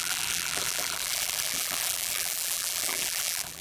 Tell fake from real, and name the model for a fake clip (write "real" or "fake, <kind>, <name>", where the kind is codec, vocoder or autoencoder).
fake, vocoder, BigVGAN v2